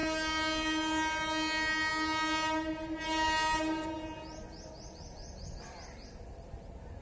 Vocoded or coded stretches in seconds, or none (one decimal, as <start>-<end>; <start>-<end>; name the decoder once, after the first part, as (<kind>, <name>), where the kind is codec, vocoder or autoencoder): none